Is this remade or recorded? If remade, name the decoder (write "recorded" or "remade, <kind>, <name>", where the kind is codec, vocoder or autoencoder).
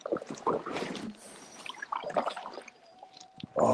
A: remade, vocoder, BigVGAN v2